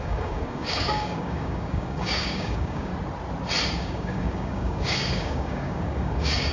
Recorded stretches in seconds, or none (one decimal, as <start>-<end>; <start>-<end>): 2.9-3.7